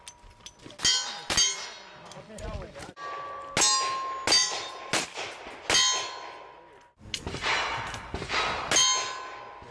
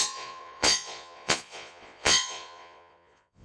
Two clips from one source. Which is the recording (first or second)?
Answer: first